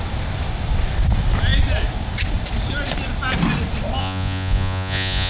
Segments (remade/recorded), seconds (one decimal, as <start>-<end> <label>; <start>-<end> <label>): 0.0-4.0 recorded; 4.0-5.3 remade